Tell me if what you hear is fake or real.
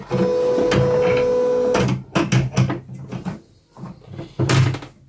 real